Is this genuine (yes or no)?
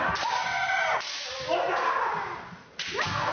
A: yes